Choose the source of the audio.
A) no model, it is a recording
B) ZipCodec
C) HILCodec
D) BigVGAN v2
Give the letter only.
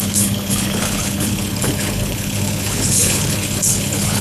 C